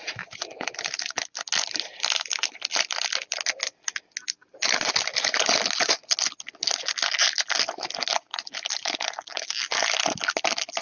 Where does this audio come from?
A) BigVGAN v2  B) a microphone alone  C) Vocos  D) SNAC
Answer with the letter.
B